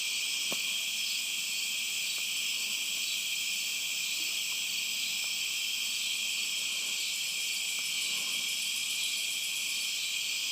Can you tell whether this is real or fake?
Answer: real